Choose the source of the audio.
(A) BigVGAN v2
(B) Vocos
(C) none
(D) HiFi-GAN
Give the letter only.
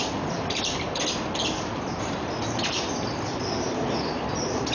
A